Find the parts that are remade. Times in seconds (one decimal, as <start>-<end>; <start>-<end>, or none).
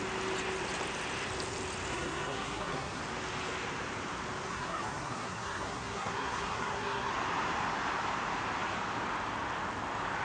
1.9-3.0; 4.5-7.1